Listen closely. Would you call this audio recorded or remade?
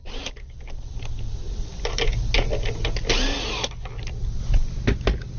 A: recorded